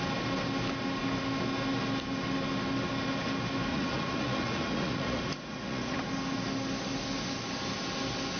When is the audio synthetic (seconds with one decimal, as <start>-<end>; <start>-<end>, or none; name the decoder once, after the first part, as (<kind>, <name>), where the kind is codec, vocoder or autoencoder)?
3.7-6.1 (vocoder, Vocos)